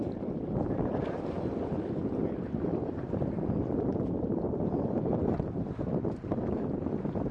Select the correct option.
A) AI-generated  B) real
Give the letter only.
B